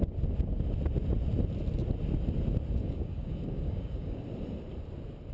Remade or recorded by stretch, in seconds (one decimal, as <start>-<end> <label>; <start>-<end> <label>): 0.0-2.8 recorded; 2.8-4.2 remade; 4.2-5.3 recorded